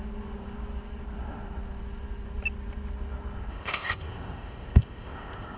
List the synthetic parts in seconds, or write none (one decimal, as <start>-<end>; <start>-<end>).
3.5-5.6